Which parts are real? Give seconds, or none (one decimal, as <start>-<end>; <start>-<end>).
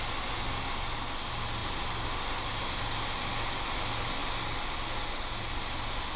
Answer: 0.0-6.2